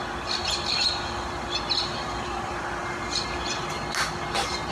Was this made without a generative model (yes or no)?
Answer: yes